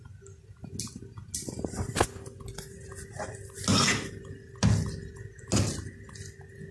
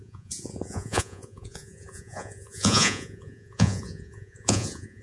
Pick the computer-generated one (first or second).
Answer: second